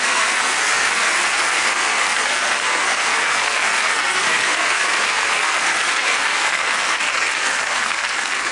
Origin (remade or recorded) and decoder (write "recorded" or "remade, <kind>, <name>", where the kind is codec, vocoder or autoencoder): remade, codec, SNAC